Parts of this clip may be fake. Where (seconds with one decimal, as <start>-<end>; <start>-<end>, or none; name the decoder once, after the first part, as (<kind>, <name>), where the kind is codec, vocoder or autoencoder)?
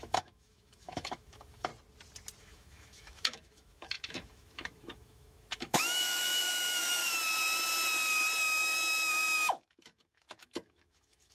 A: 0.0-1.7 (autoencoder, DAC-VAE); 2.4-7.0; 8.4-11.3